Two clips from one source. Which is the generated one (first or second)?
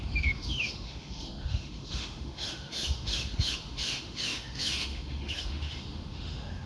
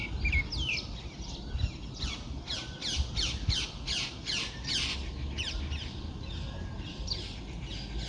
first